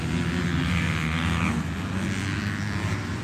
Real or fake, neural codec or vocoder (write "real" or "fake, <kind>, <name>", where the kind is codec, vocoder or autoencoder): real